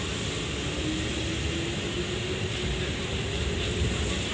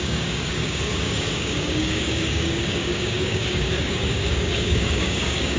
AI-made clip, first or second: second